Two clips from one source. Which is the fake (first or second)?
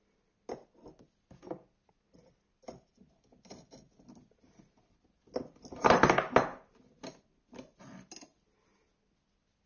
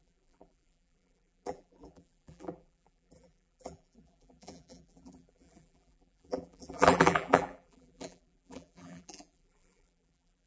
second